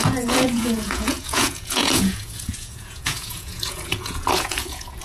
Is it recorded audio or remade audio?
remade